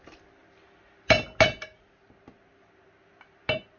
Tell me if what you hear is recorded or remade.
recorded